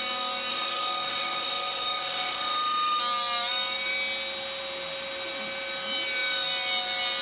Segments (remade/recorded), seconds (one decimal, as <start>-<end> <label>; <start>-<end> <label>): 0.0-0.5 recorded; 0.5-3.0 remade; 3.0-7.2 recorded